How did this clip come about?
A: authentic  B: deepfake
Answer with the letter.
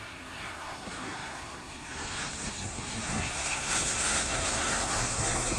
B